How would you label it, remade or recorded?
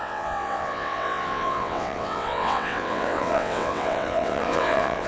remade